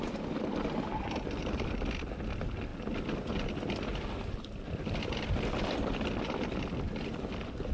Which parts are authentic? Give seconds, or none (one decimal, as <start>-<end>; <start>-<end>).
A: 0.0-7.7